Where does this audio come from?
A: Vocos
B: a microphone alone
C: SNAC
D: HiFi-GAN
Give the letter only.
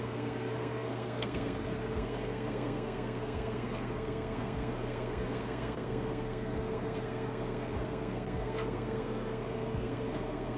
C